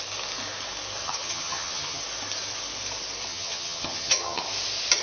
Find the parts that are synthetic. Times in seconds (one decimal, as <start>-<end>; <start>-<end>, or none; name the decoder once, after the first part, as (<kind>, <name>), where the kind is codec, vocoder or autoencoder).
1.0-2.0 (vocoder, HiFi-GAN); 3.3-4.4